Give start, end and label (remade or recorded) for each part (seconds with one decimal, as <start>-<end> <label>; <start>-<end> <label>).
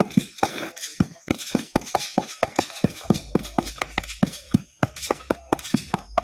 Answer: 0.0-6.2 remade